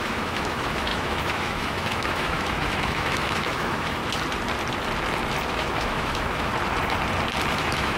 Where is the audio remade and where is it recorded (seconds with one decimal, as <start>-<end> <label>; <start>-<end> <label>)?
0.0-4.0 remade; 4.0-5.5 recorded; 5.5-6.5 remade; 6.5-7.5 recorded; 7.5-8.0 remade

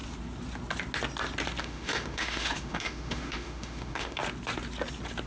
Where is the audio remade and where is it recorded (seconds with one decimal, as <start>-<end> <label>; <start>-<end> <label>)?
0.0-1.6 recorded; 1.6-4.2 remade; 4.2-5.3 recorded

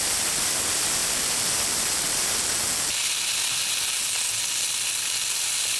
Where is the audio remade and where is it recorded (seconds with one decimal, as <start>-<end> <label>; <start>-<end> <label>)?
0.0-5.8 recorded

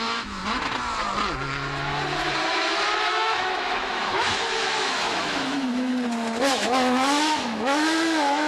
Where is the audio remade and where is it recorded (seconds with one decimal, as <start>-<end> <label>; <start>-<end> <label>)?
0.0-0.4 remade; 0.4-3.1 recorded; 3.1-5.9 remade; 5.9-6.5 recorded; 6.5-8.5 remade

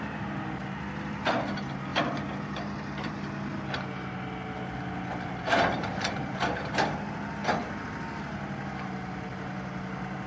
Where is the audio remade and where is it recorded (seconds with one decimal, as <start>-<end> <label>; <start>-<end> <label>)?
0.0-10.3 recorded

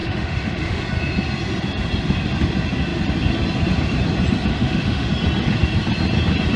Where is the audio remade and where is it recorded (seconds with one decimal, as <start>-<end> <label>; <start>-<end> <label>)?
0.0-0.8 remade; 0.8-4.5 recorded; 4.5-5.1 remade; 5.1-6.6 recorded